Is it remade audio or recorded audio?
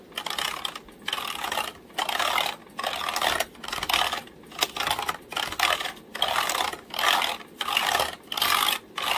recorded